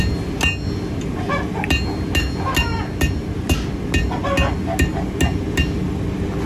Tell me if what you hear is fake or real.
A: real